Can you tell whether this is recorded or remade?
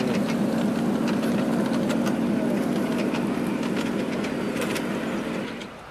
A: recorded